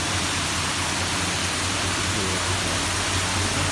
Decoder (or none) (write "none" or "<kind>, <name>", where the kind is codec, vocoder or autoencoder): none